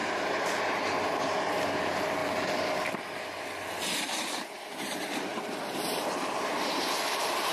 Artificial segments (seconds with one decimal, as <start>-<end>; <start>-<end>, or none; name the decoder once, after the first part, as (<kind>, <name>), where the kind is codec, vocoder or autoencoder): 0.0-2.2 (vocoder, BigVGAN v2); 3.8-7.5